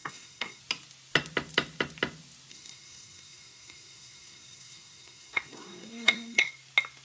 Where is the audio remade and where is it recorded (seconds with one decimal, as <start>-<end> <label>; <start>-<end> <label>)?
0.0-0.6 remade; 0.6-2.5 recorded; 2.5-6.5 remade; 6.5-7.0 recorded